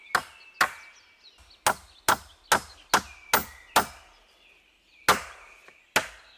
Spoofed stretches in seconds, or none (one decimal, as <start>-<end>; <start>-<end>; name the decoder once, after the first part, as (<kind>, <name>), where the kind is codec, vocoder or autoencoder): none